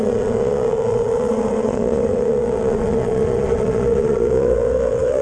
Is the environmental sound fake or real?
fake